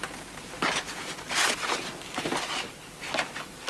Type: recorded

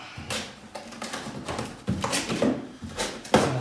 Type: recorded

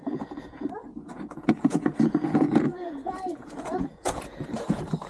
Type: remade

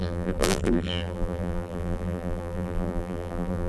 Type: remade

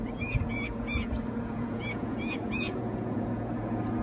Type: remade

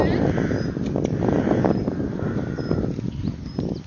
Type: recorded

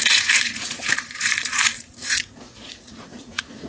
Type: remade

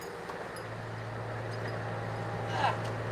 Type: recorded